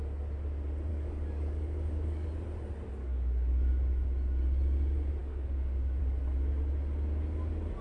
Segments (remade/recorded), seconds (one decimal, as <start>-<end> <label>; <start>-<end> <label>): 0.0-0.9 recorded; 0.9-2.3 remade; 2.3-3.0 recorded; 3.0-3.7 remade; 3.7-5.2 recorded; 5.2-6.0 remade; 6.0-7.8 recorded